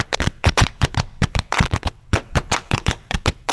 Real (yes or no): no